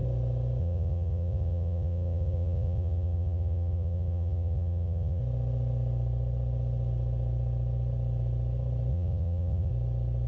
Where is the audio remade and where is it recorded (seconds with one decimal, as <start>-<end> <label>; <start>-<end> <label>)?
0.0-0.6 recorded; 0.6-5.2 remade; 5.2-8.9 recorded; 8.9-9.7 remade; 9.7-10.3 recorded